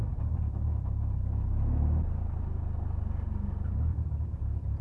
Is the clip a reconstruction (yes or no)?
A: no